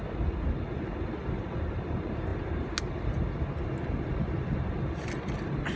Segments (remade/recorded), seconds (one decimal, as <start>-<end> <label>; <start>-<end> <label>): 0.0-5.8 recorded